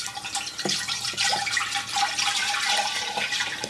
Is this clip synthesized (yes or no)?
yes